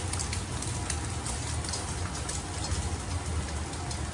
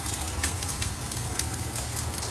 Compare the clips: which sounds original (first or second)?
first